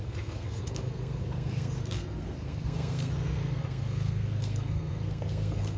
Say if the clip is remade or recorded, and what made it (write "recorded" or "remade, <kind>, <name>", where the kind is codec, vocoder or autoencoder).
remade, codec, SNAC